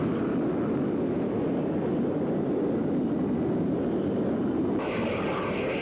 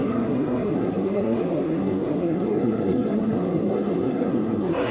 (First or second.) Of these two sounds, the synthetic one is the second